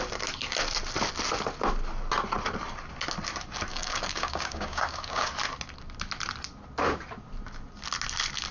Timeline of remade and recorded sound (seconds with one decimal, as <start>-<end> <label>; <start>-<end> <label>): 0.0-3.7 recorded; 3.7-5.3 remade; 5.3-8.5 recorded